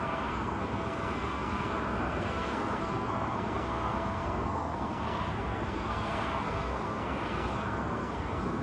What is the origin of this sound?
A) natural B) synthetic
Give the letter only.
B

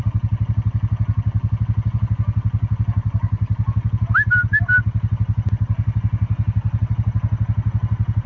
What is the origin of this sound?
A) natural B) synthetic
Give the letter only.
A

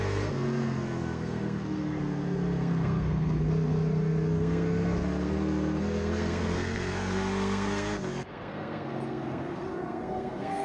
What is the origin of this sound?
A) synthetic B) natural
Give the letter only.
A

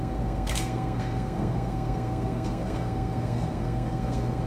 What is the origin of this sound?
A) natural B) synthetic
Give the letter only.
B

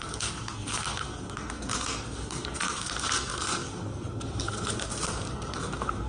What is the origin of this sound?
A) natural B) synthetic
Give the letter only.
B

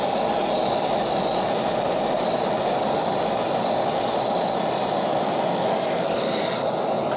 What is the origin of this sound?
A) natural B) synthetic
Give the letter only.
A